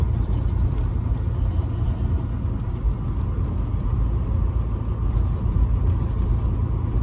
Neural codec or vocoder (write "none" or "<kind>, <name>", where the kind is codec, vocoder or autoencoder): none